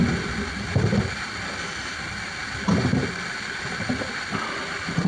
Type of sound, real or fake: real